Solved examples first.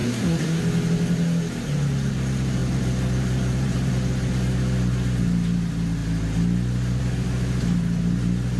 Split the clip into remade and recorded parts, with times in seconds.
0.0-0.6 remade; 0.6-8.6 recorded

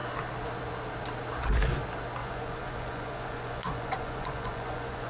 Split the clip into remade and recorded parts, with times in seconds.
0.0-2.2 recorded; 2.2-5.1 remade

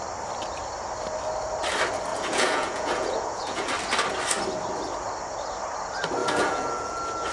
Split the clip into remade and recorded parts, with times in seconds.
0.0-2.1 recorded; 2.1-3.7 remade; 3.7-6.2 recorded; 6.2-7.3 remade